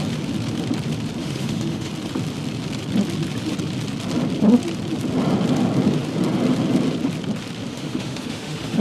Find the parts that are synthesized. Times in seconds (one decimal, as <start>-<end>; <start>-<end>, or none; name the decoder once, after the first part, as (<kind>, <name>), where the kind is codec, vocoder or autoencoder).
1.2-1.9 (autoencoder, DAC-VAE); 7.7-8.8